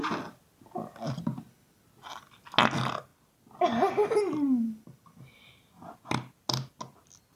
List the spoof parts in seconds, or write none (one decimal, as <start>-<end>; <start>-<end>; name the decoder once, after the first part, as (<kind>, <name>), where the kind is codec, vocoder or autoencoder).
none